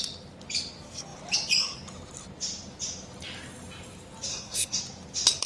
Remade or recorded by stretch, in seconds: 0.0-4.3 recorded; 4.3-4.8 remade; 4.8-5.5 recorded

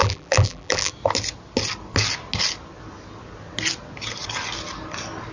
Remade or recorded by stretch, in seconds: 0.0-0.9 remade; 0.9-5.3 recorded

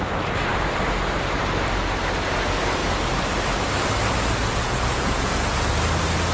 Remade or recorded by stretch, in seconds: 0.0-4.4 recorded; 4.4-5.7 remade; 5.7-6.3 recorded